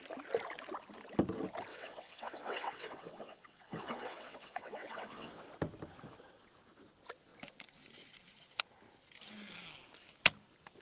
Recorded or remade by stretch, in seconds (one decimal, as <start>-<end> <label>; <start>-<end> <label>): 0.0-1.7 recorded; 1.7-5.4 remade; 5.4-10.8 recorded